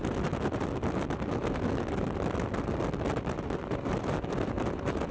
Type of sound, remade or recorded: recorded